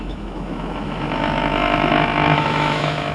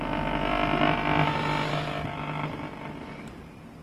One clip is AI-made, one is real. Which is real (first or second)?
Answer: second